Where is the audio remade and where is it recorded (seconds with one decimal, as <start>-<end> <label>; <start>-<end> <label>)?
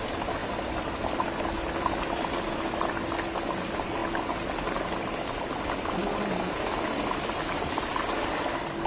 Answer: 0.0-0.4 recorded; 0.4-1.1 remade; 1.1-8.9 recorded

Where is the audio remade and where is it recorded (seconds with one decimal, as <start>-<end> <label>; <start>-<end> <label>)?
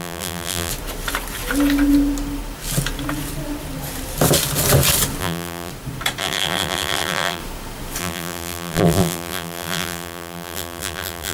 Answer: 0.0-0.7 remade; 0.7-5.2 recorded; 5.2-5.7 remade; 5.7-6.2 recorded; 6.2-7.4 remade; 7.4-8.0 recorded; 8.0-11.3 remade